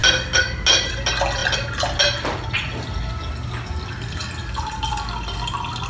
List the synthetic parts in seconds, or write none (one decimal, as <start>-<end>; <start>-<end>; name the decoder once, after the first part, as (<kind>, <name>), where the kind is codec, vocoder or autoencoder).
none